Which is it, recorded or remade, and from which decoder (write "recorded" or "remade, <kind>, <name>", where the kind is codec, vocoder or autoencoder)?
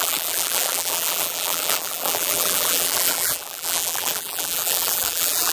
remade, vocoder, BigVGAN v2